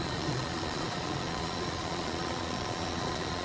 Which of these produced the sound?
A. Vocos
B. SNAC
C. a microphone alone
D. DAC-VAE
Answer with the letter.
A